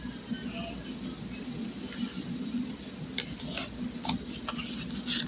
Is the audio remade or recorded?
recorded